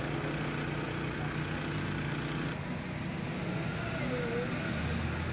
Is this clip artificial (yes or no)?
no